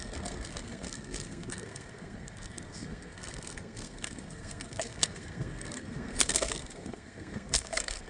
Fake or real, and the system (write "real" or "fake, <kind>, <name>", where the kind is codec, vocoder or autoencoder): fake, codec, SNAC